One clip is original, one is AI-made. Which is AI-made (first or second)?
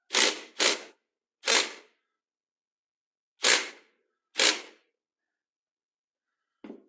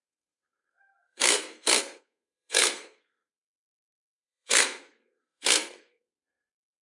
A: second